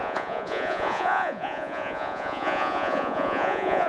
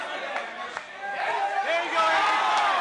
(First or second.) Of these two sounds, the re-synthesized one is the first